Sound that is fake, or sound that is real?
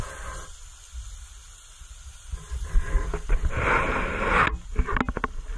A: real